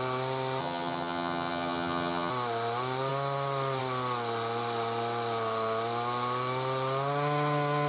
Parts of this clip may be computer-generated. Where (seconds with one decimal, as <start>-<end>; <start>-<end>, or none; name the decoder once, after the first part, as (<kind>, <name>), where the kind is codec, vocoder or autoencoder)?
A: 0.6-2.3 (vocoder, HiFi-GAN)